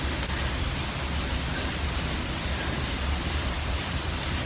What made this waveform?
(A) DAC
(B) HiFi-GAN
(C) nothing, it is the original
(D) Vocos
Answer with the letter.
C